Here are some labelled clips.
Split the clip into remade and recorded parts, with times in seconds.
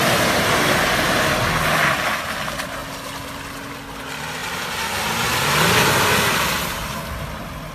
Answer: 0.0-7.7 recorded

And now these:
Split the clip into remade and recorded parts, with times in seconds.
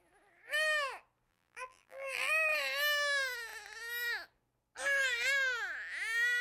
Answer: 0.0-1.3 recorded; 1.3-2.3 remade; 2.3-6.4 recorded